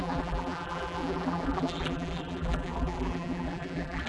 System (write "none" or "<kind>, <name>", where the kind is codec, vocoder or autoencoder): vocoder, BigVGAN v2